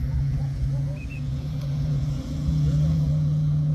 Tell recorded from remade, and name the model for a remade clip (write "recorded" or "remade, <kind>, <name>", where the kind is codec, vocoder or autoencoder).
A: remade, vocoder, Vocos